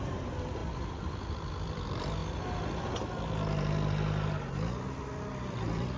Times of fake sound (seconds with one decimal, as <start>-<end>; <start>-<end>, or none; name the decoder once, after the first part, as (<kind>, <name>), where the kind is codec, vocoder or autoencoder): 0.0-2.2 (vocoder, BigVGAN v2); 5.3-6.0